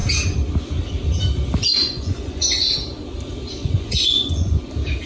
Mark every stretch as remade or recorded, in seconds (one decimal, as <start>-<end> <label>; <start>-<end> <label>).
0.0-1.8 recorded; 1.8-2.6 remade; 2.6-3.6 recorded; 3.6-4.6 remade; 4.6-5.1 recorded